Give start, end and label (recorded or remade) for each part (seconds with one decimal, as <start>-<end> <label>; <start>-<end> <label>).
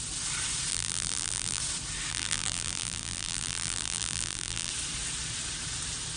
0.0-0.7 recorded; 0.7-1.6 remade; 1.6-2.1 recorded; 2.1-4.7 remade; 4.7-6.2 recorded